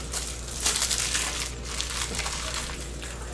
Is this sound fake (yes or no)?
no